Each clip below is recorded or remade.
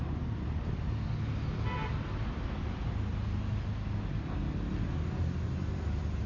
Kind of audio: recorded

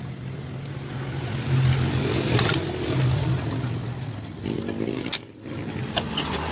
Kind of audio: recorded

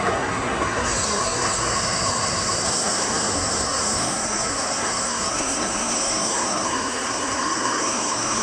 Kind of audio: remade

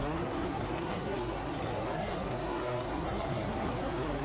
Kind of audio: remade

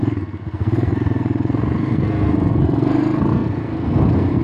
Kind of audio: remade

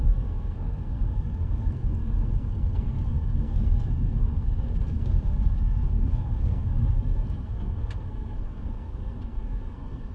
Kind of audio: remade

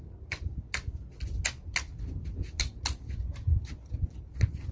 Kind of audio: recorded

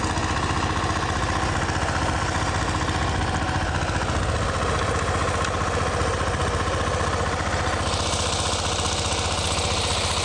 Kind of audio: recorded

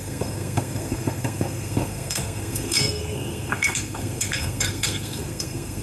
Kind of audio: remade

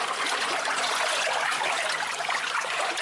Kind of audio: remade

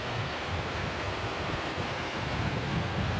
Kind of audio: remade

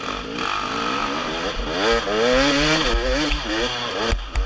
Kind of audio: recorded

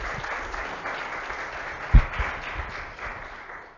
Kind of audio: recorded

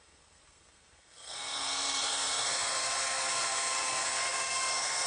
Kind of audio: remade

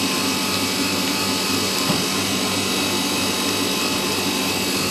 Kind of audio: recorded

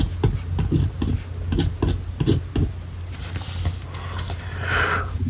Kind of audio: recorded